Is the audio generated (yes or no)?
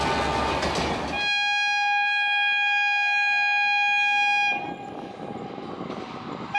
no